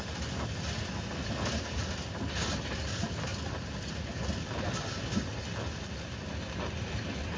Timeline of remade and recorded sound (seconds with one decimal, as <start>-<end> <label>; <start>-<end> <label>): 0.0-3.3 recorded; 3.3-6.3 remade; 6.3-7.4 recorded